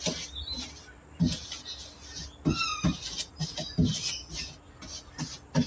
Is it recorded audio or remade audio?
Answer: recorded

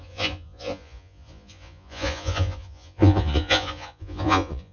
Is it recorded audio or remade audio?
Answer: remade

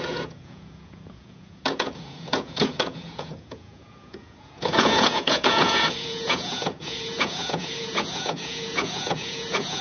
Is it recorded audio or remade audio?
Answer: remade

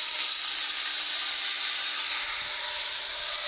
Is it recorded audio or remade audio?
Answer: recorded